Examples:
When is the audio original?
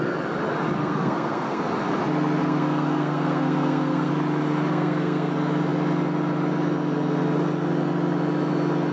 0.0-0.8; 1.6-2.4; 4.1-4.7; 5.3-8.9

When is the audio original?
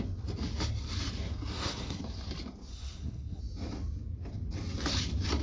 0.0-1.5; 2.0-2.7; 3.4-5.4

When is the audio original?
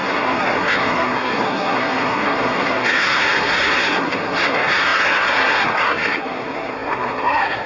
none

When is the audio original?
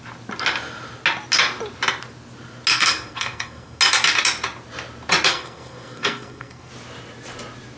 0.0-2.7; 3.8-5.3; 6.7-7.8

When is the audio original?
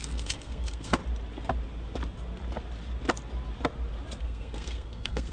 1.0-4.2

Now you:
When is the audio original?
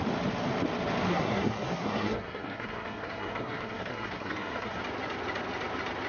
0.0-1.1; 4.8-6.1